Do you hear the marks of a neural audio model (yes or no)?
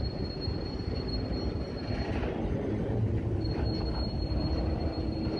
no